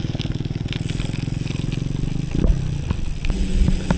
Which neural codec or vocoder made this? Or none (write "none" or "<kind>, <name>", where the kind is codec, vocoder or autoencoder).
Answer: none